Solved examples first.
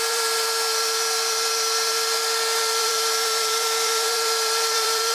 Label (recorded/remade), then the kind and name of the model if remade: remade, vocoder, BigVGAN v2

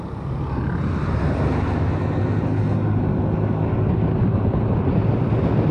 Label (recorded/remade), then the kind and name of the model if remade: recorded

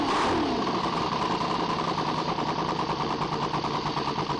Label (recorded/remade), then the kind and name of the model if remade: recorded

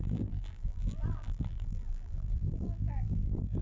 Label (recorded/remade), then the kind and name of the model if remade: remade, vocoder, BigVGAN v2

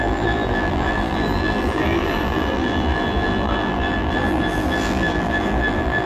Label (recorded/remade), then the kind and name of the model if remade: remade, vocoder, BigVGAN v2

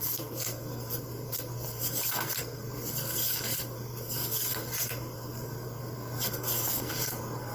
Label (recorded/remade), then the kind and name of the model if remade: remade, codec, SNAC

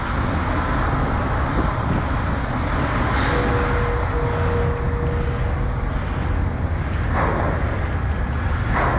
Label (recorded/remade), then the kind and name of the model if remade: recorded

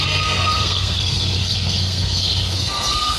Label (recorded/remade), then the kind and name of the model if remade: remade, codec, SNAC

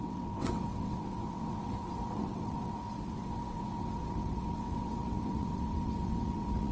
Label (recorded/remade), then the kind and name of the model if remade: remade, vocoder, WaveNeXt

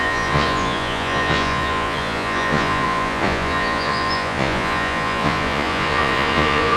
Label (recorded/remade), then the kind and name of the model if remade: remade, vocoder, Vocos